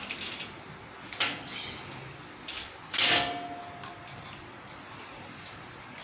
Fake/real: real